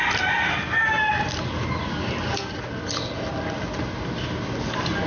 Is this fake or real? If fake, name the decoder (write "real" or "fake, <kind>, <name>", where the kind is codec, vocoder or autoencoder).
real